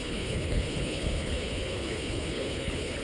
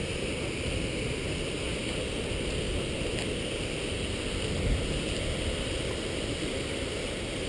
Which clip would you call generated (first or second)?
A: first